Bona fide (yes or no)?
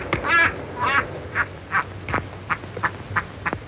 yes